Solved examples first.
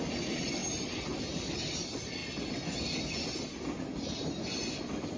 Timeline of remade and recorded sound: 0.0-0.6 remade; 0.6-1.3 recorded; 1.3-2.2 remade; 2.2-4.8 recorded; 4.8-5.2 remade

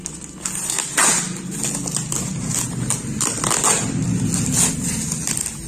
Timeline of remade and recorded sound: 0.0-5.7 recorded

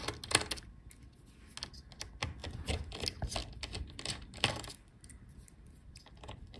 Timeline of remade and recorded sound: 0.0-2.4 recorded; 2.4-3.0 remade; 3.0-3.4 recorded; 3.4-6.6 remade

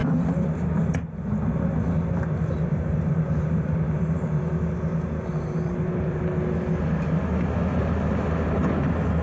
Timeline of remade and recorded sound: 0.0-0.5 remade; 0.5-2.7 recorded; 2.7-4.4 remade; 4.4-4.9 recorded; 4.9-6.2 remade; 6.2-7.7 recorded; 7.7-8.2 remade; 8.2-9.2 recorded

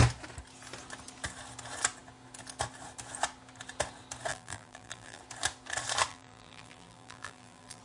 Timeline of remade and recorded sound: 0.0-4.3 recorded; 4.3-5.2 remade; 5.2-6.1 recorded; 6.1-7.8 remade